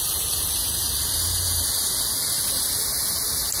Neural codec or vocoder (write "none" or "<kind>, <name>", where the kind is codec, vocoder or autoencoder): none